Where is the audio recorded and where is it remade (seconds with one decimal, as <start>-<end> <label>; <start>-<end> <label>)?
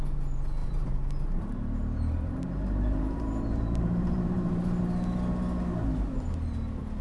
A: 0.0-0.6 recorded; 0.6-4.8 remade; 4.8-7.0 recorded